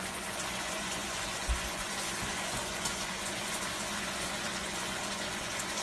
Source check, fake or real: fake